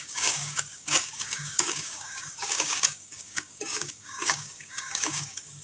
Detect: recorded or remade remade